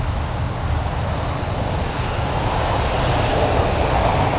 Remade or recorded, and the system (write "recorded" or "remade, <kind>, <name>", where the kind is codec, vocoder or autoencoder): recorded